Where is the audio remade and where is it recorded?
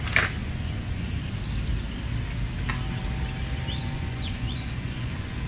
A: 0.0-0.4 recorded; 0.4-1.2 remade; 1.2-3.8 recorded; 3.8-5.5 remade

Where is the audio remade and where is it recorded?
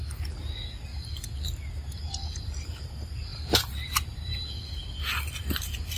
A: 0.0-3.3 recorded; 3.3-4.6 remade; 4.6-6.0 recorded